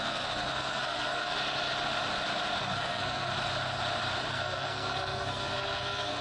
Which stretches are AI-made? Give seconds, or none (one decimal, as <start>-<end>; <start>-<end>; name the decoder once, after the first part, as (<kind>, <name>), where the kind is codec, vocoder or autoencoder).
0.0-1.3 (codec, SNAC); 2.6-3.3; 4.3-6.2